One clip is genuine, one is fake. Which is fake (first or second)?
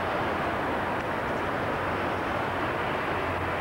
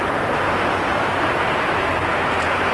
second